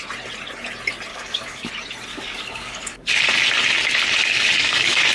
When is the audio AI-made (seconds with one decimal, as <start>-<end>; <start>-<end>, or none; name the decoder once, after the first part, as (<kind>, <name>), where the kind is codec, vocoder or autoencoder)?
1.1-1.7 (codec, DAC); 2.1-3.2; 4.2-5.1